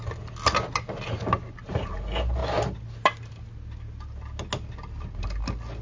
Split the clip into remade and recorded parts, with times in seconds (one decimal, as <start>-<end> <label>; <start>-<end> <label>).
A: 0.0-5.8 recorded